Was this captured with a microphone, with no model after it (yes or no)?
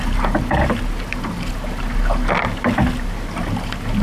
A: yes